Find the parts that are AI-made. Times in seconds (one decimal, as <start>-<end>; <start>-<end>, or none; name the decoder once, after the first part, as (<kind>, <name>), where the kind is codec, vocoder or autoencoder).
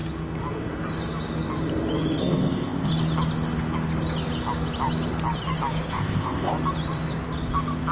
2.2-2.9 (codec, ZipCodec); 5.9-6.5